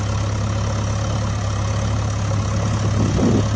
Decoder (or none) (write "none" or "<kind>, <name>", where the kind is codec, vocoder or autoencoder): none